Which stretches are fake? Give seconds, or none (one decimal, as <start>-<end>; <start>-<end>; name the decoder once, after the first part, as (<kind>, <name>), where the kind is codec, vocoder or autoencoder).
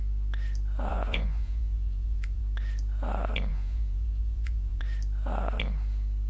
0.9-2.4 (vocoder, Vocos); 3.5-4.8